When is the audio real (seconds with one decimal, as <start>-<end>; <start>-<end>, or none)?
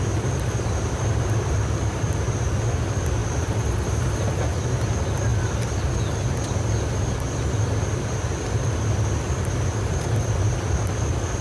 0.0-11.4